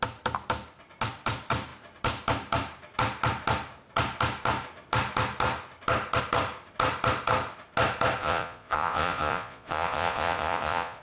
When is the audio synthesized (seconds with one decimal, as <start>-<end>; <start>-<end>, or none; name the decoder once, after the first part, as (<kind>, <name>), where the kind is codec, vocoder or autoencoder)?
8.2-11.0 (vocoder, Vocos)